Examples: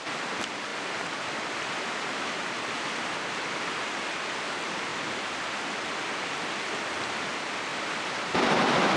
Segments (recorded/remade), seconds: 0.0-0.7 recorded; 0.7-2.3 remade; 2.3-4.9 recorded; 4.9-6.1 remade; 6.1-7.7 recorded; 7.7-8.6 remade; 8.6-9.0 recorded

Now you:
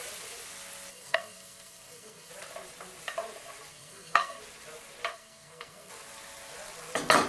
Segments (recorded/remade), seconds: 0.0-0.9 recorded; 0.9-2.3 remade; 2.3-3.7 recorded; 3.7-4.4 remade; 4.4-5.1 recorded; 5.1-5.9 remade; 5.9-7.3 recorded

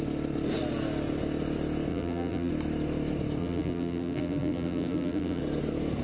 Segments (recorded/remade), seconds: 0.0-1.9 recorded; 1.9-2.5 remade; 2.5-3.4 recorded; 3.4-5.4 remade; 5.4-6.0 recorded

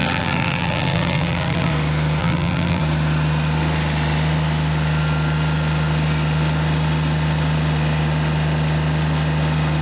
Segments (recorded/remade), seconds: 0.0-1.7 remade; 1.7-2.2 recorded; 2.2-2.8 remade; 2.8-9.8 recorded